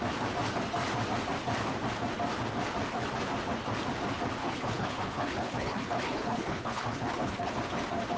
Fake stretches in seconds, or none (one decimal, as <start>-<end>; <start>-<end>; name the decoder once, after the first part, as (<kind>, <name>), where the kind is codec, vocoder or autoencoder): 4.4-7.5 (codec, HILCodec)